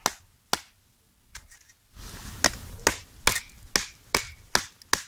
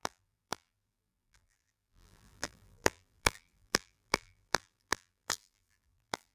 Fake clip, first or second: second